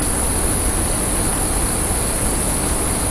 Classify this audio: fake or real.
real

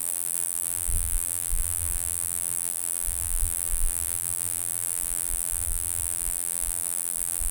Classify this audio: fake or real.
fake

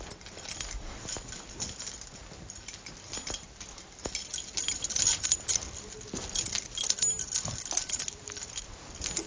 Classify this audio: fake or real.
real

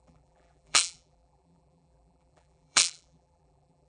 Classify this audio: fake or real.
fake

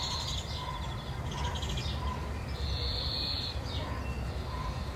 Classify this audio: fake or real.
real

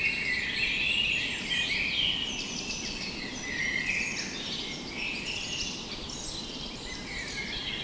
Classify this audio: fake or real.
fake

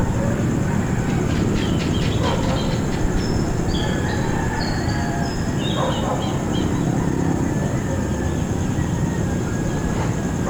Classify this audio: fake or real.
fake